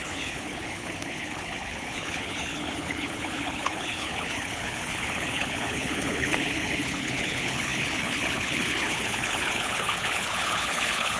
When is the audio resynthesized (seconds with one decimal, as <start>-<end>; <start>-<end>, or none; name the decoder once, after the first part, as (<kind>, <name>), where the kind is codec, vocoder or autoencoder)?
0.0-11.2 (codec, HILCodec)